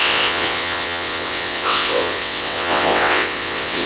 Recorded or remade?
remade